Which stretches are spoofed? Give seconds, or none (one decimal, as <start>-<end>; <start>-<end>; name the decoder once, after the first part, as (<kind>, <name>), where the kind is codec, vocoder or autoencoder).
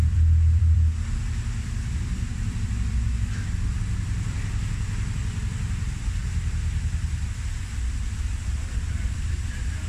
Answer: 0.0-6.2 (vocoder, BigVGAN v2); 7.1-9.9